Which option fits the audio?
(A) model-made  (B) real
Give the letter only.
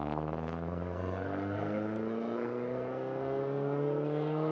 A